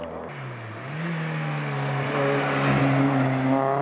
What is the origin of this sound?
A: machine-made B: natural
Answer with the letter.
B